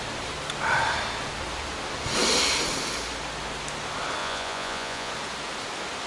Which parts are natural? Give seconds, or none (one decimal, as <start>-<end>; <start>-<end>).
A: 0.0-4.2; 5.1-6.1